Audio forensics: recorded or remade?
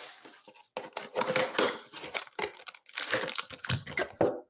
recorded